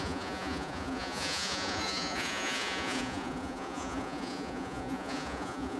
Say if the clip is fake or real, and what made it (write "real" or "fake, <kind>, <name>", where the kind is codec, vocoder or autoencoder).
fake, vocoder, Vocos